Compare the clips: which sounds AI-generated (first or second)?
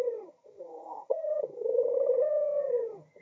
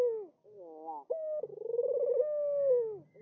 first